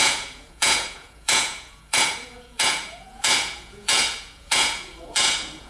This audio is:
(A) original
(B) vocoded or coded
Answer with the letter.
B